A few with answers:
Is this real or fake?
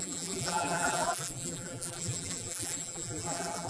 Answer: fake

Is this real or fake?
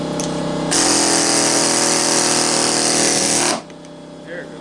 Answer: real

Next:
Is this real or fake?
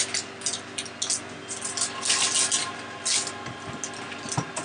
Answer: real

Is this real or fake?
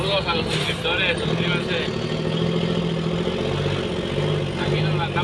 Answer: real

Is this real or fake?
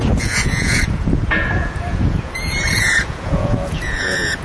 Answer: fake